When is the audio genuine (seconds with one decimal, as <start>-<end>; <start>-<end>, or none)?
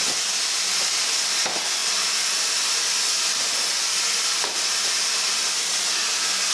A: 0.0-6.5